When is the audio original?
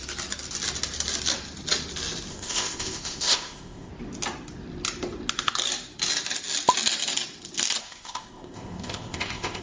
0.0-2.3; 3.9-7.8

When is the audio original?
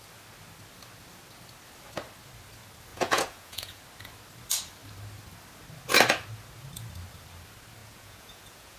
0.0-2.9; 3.8-7.8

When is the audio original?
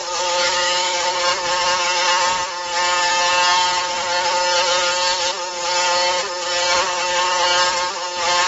1.1-8.5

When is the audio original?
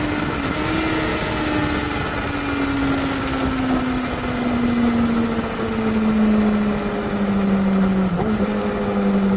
0.0-9.4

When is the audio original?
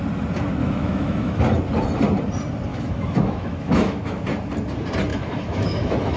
0.0-0.6; 1.4-2.7; 4.2-5.1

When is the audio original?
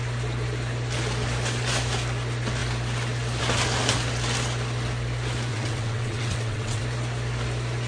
0.0-5.5; 6.8-7.9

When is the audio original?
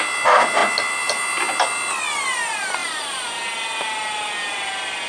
0.0-5.1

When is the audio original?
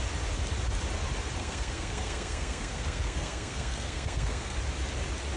0.0-1.4; 4.6-5.4